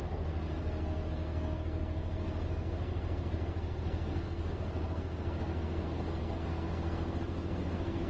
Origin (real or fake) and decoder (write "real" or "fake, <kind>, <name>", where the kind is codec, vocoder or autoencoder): fake, codec, SNAC